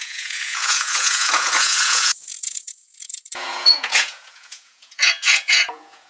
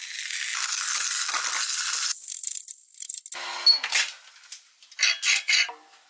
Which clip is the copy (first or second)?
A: first